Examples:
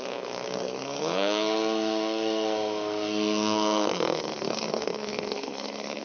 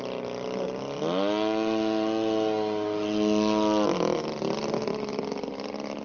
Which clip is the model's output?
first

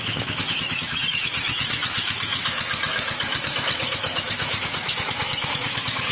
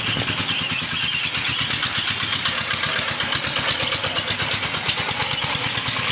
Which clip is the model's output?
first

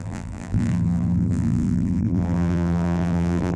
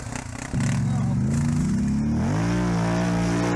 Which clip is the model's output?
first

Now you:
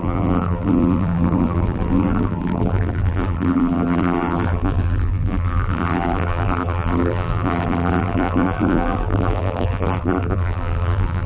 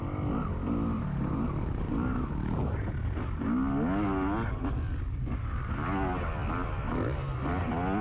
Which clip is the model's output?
first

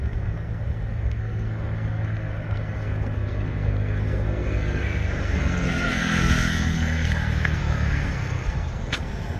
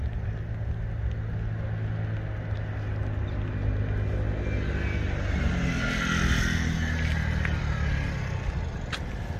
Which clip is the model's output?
first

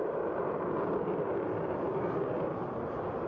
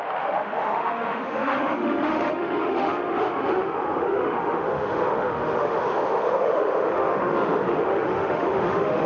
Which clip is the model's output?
second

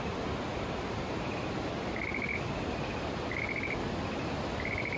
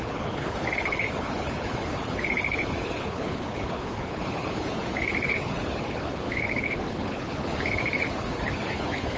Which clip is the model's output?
second